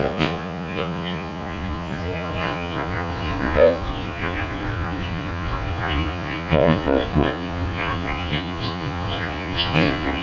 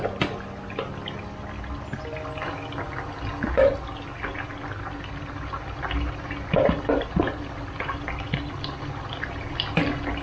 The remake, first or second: first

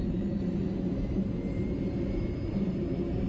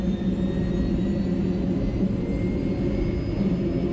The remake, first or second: first